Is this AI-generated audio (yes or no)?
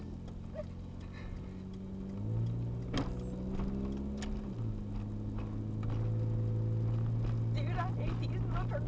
no